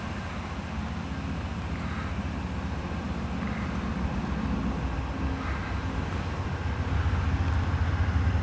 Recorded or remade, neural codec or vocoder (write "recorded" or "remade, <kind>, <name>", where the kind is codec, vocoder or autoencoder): recorded